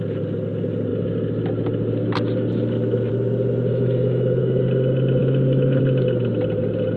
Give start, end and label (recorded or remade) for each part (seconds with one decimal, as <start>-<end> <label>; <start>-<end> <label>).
0.0-3.7 recorded; 3.7-4.4 remade; 4.4-5.2 recorded; 5.2-5.8 remade; 5.8-7.0 recorded